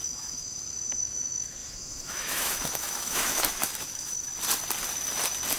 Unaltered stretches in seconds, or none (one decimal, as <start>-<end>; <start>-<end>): 4.3-5.6